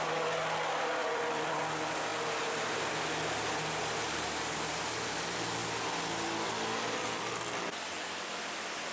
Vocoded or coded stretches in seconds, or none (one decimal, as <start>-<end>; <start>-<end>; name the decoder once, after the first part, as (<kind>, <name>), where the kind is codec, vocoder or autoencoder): 1.0-1.6 (vocoder, BigVGAN v2)